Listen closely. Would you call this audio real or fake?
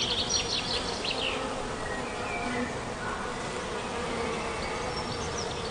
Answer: real